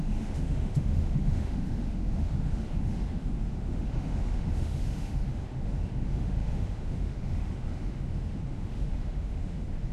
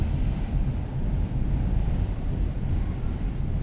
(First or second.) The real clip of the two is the second